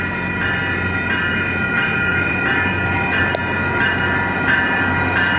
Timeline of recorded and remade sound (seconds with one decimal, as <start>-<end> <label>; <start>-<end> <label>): 0.0-2.1 recorded; 2.1-2.7 remade; 2.7-5.4 recorded